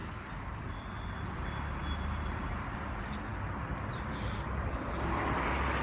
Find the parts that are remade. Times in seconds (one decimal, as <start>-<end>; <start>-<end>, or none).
none